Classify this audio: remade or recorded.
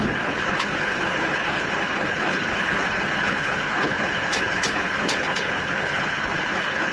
remade